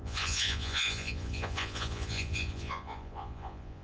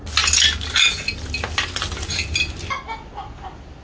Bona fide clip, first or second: second